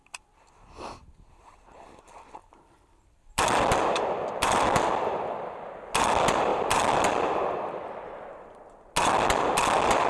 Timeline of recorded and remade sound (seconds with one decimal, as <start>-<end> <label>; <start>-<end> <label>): 0.0-2.4 recorded; 2.4-5.4 remade; 5.4-6.5 recorded; 6.5-8.6 remade; 8.6-10.1 recorded